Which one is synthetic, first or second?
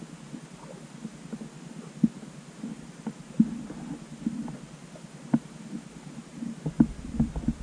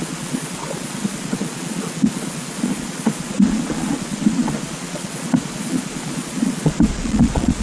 second